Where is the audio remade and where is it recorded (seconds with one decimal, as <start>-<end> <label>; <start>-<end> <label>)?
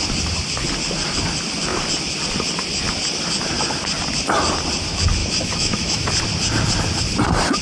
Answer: 0.0-5.2 recorded; 5.2-6.1 remade; 6.1-7.6 recorded